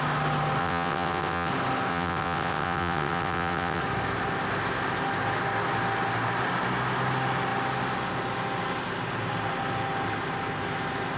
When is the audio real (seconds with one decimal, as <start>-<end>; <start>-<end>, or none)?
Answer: 0.0-0.6; 1.5-1.9; 3.8-11.2